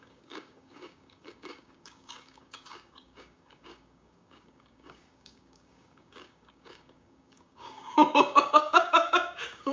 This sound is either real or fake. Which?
fake